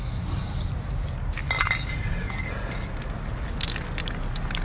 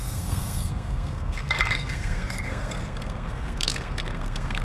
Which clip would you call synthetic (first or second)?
second